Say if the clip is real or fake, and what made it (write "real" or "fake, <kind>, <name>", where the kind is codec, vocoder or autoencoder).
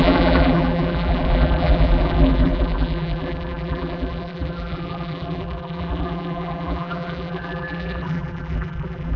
fake, vocoder, BigVGAN v2